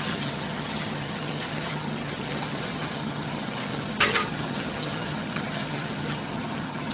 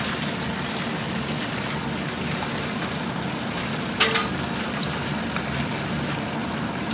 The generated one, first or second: first